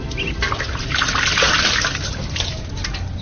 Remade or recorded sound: recorded